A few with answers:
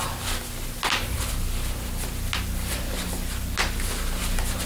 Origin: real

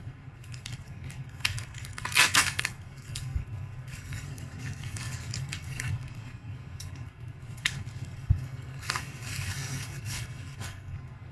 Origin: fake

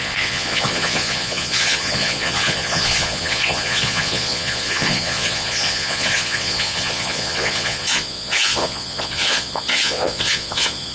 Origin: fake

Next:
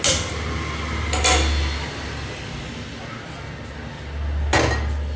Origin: real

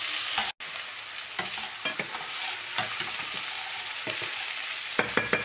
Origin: real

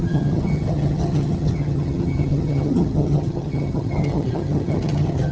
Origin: fake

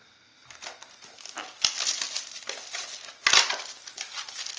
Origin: real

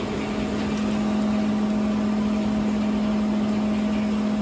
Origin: real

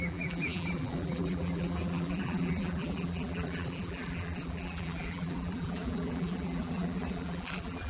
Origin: fake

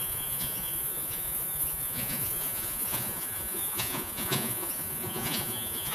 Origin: fake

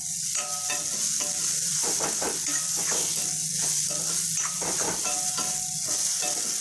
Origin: real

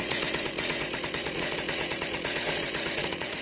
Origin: fake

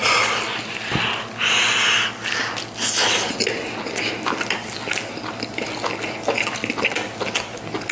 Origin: real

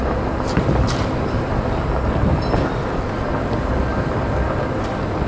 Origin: real